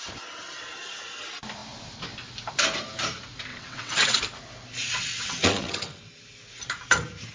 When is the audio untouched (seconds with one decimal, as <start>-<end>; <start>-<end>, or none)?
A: 0.0-3.5; 4.2-4.8; 6.0-7.3